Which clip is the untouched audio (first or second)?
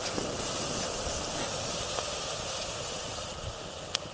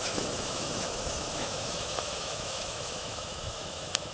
first